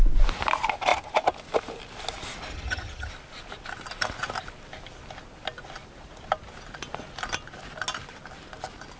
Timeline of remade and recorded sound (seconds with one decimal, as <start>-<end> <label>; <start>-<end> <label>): 0.0-2.5 recorded; 2.5-3.1 remade; 3.1-9.0 recorded